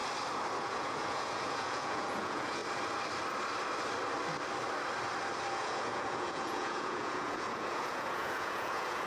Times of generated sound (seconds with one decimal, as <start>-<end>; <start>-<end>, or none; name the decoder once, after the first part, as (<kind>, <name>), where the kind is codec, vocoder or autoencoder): 0.6-2.6 (vocoder, Vocos); 5.5-9.1